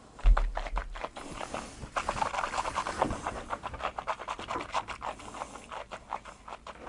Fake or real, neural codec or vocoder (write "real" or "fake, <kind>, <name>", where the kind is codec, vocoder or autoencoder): real